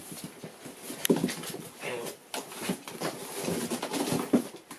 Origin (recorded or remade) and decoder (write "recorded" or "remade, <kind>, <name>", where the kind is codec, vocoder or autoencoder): recorded